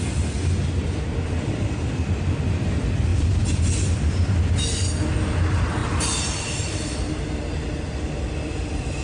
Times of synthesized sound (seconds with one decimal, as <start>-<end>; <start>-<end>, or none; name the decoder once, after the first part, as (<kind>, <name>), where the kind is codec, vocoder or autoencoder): 3.1-4.2 (vocoder, BigVGAN v2); 5.8-6.9